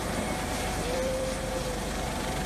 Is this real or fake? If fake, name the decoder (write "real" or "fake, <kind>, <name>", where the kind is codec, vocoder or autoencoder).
fake, vocoder, BigVGAN v2